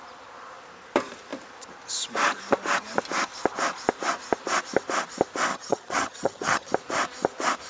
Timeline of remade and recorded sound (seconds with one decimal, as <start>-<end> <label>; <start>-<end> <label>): 0.0-5.5 recorded; 5.5-6.7 remade; 6.7-7.7 recorded